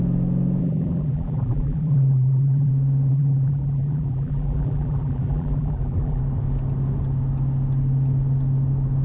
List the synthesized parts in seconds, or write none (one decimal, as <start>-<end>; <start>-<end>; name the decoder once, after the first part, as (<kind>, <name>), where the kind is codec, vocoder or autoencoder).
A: 0.6-2.7 (vocoder, BigVGAN v2); 3.1-6.2